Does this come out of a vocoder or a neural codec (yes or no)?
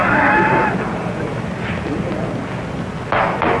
no